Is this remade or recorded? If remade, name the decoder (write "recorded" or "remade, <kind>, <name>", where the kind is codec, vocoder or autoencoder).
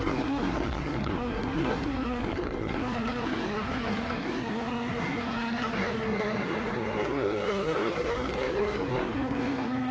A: remade, codec, SNAC